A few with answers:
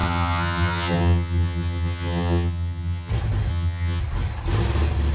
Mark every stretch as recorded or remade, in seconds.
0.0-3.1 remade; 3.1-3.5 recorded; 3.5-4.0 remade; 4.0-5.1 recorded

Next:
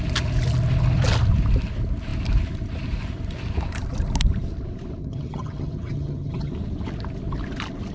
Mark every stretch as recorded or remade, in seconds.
0.0-5.0 recorded; 5.0-6.5 remade; 6.5-7.9 recorded